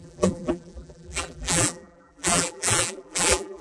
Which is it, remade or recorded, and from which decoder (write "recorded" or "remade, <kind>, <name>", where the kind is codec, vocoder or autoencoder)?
remade, vocoder, BigVGAN v2